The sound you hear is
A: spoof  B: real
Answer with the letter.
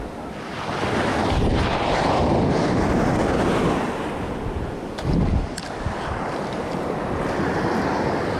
B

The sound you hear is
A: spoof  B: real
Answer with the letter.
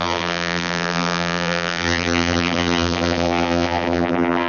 A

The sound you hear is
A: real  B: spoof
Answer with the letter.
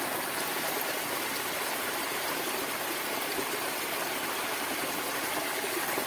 A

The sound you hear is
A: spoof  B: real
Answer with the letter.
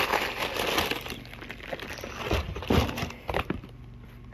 B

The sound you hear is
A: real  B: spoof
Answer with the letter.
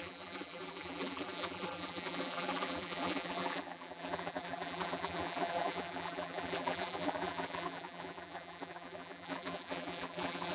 B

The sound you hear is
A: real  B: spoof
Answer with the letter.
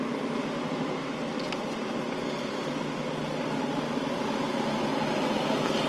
A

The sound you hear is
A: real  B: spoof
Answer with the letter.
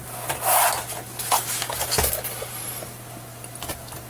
A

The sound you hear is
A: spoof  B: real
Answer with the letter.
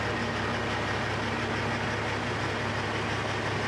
B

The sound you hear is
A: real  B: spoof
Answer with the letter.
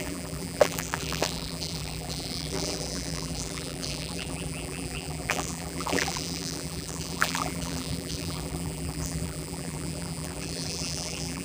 B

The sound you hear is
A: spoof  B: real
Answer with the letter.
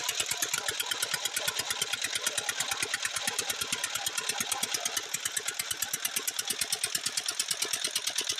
B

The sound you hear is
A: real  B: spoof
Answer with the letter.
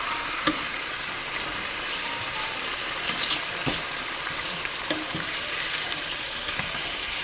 B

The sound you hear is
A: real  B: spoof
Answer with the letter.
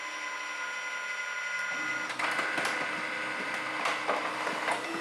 A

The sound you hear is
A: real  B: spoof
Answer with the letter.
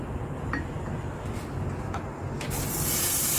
A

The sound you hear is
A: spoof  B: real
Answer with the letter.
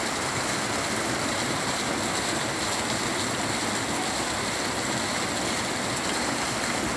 B